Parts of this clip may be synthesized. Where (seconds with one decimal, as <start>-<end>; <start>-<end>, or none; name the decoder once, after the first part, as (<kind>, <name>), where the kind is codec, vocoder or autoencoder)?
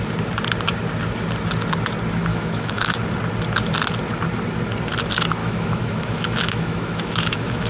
2.3-2.9 (autoencoder, DAC-VAE); 5.4-7.7